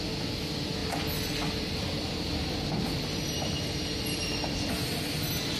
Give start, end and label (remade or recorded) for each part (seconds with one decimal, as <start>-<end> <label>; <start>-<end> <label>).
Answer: 0.0-0.8 recorded; 0.8-4.2 remade; 4.2-5.6 recorded